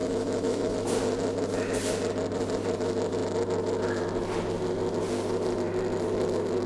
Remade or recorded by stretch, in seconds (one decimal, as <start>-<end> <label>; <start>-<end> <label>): 0.0-0.7 remade; 0.7-6.7 recorded